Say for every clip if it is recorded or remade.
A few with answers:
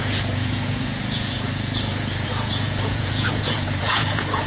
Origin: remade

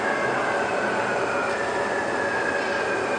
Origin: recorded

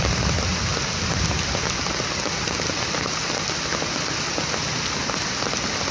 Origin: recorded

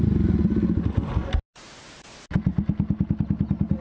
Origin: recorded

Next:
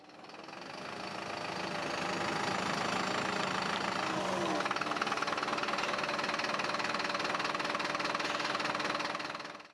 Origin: recorded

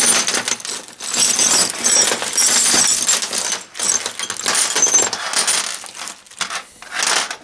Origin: recorded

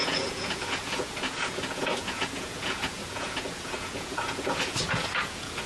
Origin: remade